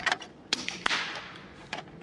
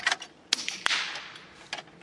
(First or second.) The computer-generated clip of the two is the first